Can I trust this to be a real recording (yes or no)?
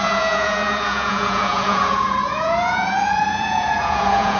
no